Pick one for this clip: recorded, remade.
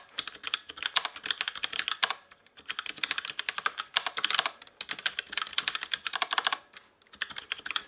recorded